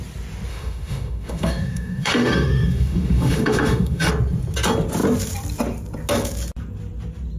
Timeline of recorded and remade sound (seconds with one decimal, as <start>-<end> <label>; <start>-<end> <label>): 0.0-0.5 recorded; 0.5-4.1 remade; 4.1-7.4 recorded